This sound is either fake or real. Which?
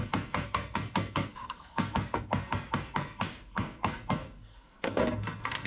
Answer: fake